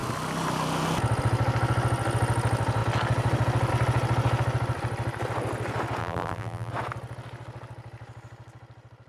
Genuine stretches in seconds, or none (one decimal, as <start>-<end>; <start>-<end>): 0.0-6.0; 6.7-9.1

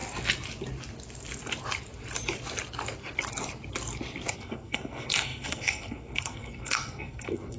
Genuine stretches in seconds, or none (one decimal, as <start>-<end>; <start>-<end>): 0.0-4.3

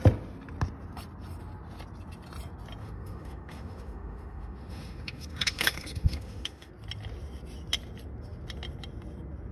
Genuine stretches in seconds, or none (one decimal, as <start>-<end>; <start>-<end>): 0.0-2.8; 6.7-9.5

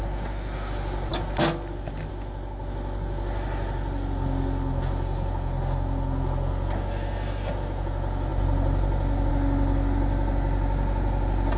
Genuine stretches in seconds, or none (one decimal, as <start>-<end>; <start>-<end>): 0.0-11.6

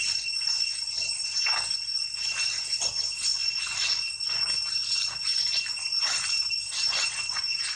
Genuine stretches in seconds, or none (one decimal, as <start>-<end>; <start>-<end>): 0.0-7.8

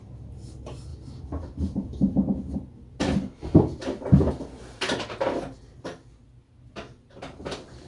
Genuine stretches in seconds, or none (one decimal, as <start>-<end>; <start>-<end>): 0.0-7.9